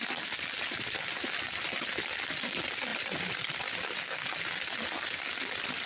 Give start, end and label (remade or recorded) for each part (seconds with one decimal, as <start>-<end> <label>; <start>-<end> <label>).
0.0-5.9 recorded